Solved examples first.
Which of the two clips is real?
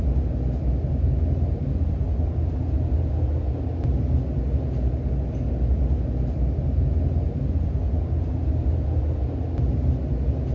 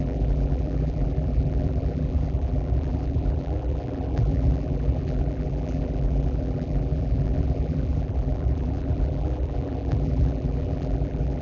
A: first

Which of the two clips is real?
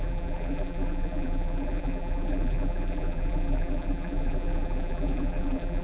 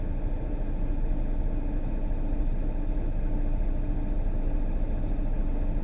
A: second